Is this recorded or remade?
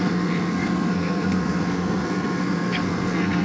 remade